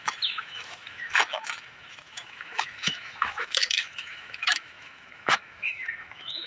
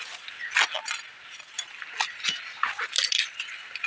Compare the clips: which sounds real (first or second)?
second